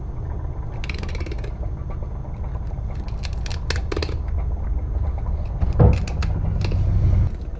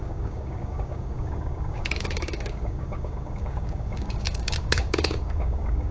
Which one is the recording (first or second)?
first